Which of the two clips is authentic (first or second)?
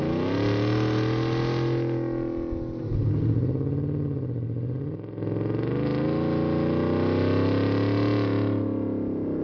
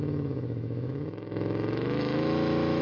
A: first